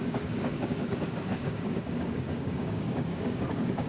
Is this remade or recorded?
remade